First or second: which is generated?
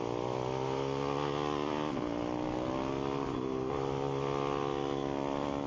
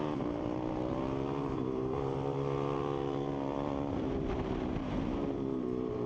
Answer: second